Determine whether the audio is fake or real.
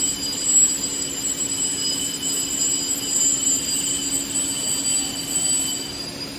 real